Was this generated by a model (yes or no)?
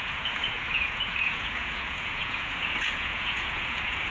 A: yes